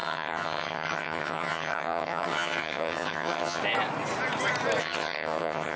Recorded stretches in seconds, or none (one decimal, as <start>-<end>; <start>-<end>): 3.6-4.8